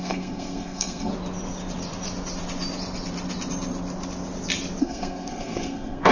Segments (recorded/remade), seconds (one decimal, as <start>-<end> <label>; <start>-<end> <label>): 0.0-1.1 remade; 1.1-4.8 recorded; 4.8-6.1 remade